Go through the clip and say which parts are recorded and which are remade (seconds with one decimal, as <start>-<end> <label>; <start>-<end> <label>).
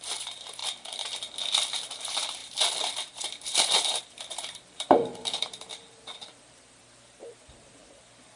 0.0-0.6 remade; 0.6-2.0 recorded; 2.0-8.4 remade